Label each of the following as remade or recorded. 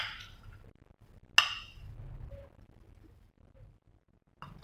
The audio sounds recorded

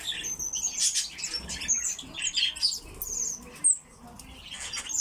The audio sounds recorded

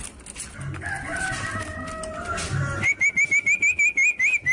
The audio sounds recorded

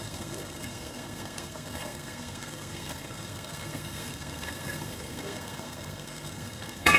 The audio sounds remade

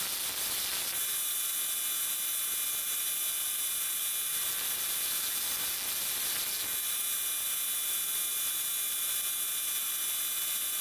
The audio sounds recorded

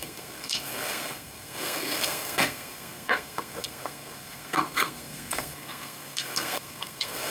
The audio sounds remade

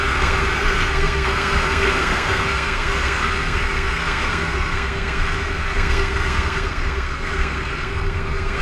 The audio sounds remade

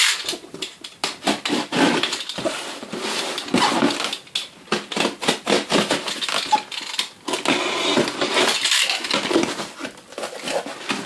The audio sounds recorded